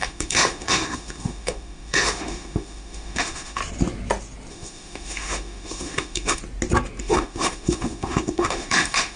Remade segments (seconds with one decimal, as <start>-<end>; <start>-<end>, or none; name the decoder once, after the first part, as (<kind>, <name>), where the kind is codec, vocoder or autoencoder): 0.0-3.6 (autoencoder, DAC-VAE); 4.5-6.4; 7.0-9.2